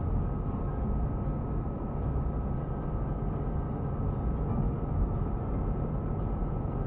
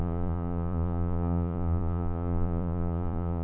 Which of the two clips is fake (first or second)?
second